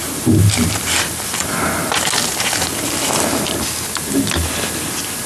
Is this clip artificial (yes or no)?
no